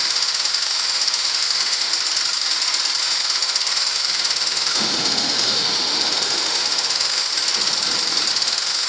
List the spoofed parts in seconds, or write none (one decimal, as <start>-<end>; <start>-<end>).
0.0-1.9; 3.0-7.3; 8.3-8.9